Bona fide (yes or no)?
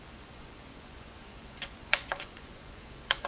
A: no